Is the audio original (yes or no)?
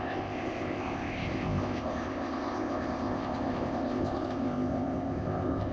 no